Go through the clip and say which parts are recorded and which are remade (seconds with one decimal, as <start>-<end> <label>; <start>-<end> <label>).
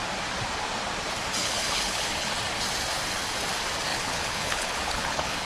0.0-1.4 recorded; 1.4-2.3 remade; 2.3-3.9 recorded; 3.9-5.5 remade